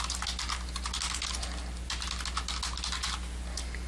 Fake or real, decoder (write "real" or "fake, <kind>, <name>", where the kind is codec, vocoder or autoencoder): real